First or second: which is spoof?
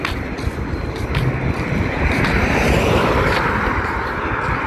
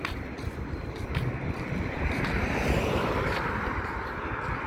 second